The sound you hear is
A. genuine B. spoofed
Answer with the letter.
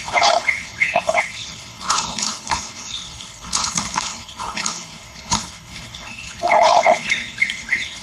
B